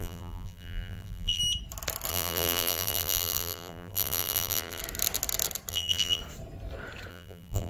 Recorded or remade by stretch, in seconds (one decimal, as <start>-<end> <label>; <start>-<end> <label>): 0.0-1.4 remade; 1.4-2.1 recorded; 2.1-4.8 remade; 4.8-5.7 recorded; 5.7-6.2 remade; 6.2-7.1 recorded; 7.1-7.7 remade